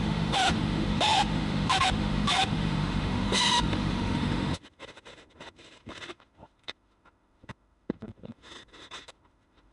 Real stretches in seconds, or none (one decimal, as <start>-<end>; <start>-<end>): none